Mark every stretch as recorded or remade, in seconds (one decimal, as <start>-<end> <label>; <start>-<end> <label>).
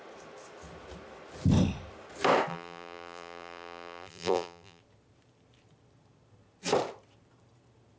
0.0-2.5 recorded; 2.5-4.8 remade; 4.8-8.0 recorded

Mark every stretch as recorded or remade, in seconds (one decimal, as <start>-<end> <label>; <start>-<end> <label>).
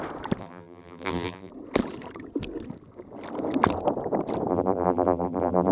0.0-0.4 recorded; 0.4-1.5 remade; 1.5-4.5 recorded; 4.5-5.7 remade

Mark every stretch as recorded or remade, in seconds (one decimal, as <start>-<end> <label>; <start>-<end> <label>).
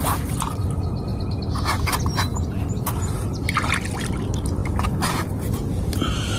0.0-6.4 recorded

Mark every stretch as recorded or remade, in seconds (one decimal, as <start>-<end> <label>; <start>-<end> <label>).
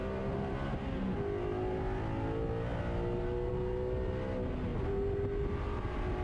0.0-6.2 recorded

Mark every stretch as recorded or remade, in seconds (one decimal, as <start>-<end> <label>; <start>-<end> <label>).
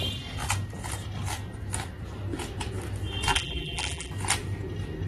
0.0-3.3 recorded; 3.3-4.1 remade; 4.1-5.1 recorded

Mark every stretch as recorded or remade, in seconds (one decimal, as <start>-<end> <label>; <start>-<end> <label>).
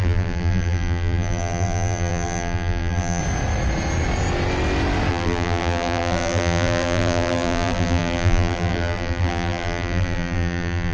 0.0-3.2 remade; 3.2-5.1 recorded; 5.1-10.9 remade